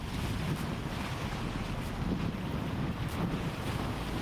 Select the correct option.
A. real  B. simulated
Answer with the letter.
A